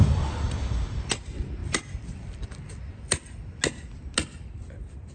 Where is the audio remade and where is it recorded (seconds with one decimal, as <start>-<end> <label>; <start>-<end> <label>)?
0.0-1.6 recorded; 1.6-3.6 remade; 3.6-5.1 recorded